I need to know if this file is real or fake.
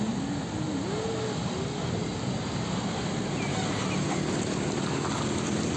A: real